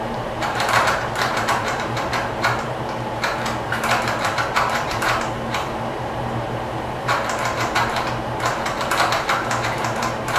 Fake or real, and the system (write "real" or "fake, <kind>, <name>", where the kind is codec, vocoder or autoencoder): fake, vocoder, BigVGAN v2